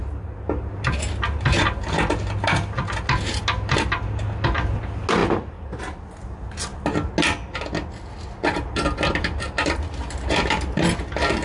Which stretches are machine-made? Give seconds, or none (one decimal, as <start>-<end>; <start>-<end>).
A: 5.2-5.8